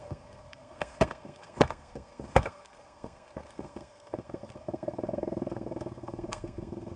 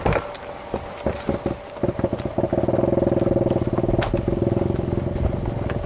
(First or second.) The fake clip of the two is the first